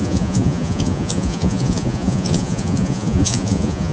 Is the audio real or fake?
fake